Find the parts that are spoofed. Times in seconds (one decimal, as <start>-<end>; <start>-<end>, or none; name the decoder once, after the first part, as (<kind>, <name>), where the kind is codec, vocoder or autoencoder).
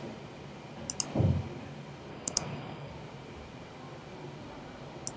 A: 2.1-2.9 (codec, SNAC)